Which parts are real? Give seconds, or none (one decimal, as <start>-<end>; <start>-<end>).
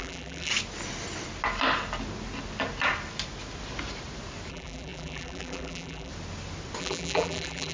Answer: 0.5-4.5; 6.1-6.8